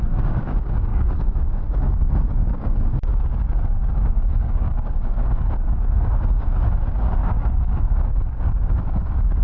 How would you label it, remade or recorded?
remade